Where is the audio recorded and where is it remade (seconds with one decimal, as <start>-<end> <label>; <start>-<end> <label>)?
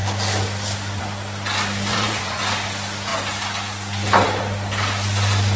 0.0-1.9 recorded; 1.9-2.4 remade; 2.4-5.6 recorded